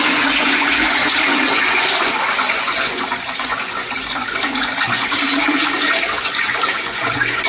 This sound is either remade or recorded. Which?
remade